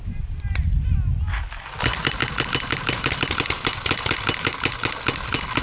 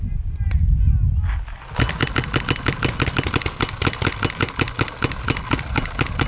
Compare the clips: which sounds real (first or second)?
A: second